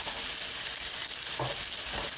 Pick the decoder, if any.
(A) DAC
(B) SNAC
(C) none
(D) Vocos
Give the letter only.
C